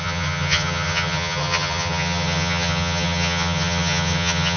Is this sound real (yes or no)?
no